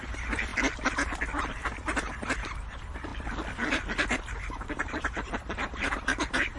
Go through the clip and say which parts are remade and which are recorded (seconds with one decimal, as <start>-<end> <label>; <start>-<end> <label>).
0.0-0.5 remade; 0.5-1.4 recorded; 1.4-3.1 remade; 3.1-4.4 recorded; 4.4-6.6 remade